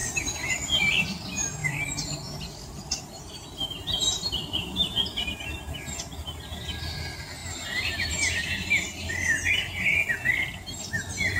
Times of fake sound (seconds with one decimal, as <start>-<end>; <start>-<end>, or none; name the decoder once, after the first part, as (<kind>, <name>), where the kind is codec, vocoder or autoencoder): 1.6-3.2 (vocoder, BigVGAN v2); 3.6-5.4; 7.4-9.6